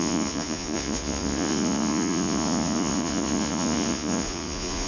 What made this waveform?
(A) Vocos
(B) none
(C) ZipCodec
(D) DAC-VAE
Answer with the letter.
A